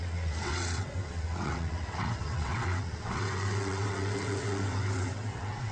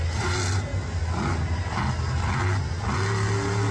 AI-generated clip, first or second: first